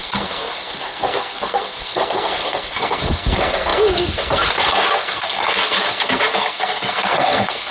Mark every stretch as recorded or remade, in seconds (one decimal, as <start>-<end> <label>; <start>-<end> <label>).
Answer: 0.0-7.7 remade